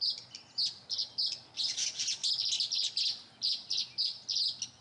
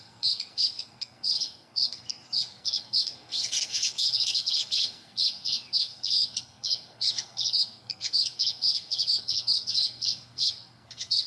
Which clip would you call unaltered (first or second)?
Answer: first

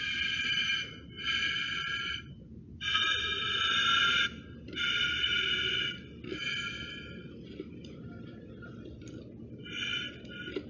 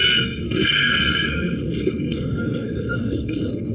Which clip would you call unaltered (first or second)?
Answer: first